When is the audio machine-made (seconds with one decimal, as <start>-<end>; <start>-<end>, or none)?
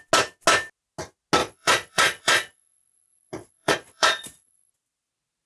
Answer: 1.4-4.7